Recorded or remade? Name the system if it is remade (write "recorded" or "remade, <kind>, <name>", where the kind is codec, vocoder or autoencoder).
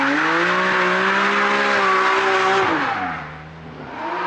recorded